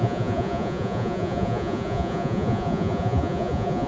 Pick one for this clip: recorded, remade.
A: remade